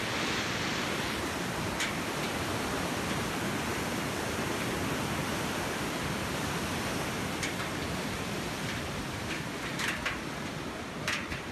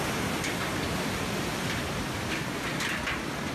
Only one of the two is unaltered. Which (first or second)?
second